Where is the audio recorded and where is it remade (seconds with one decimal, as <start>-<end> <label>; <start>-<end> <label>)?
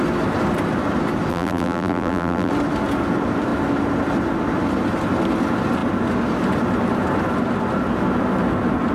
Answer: 0.0-1.3 recorded; 1.3-2.5 remade; 2.5-8.9 recorded